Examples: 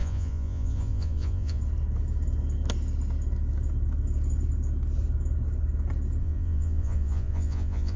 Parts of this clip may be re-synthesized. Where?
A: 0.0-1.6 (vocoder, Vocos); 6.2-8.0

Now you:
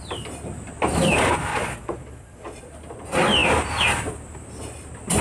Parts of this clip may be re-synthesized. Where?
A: 1.5-2.6 (vocoder, Vocos)

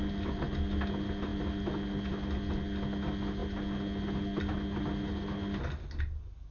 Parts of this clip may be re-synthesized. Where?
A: none

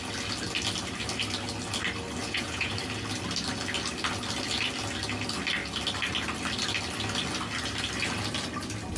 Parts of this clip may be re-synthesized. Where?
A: 2.2-2.7 (vocoder, Vocos)

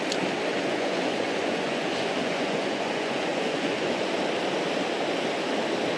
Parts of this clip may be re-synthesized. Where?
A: 0.5-4.1 (vocoder, Vocos)

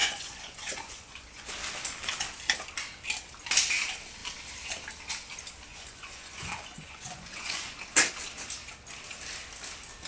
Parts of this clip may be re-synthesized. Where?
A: 0.0-1.5 (vocoder, Vocos); 5.7-7.7